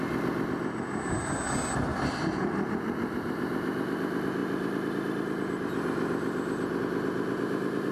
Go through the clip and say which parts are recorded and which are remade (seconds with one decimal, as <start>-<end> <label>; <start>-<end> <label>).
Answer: 0.0-1.9 recorded; 1.9-2.7 remade; 2.7-4.4 recorded; 4.4-6.8 remade; 6.8-7.9 recorded